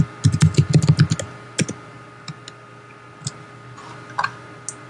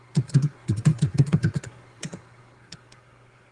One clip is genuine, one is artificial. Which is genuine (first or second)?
first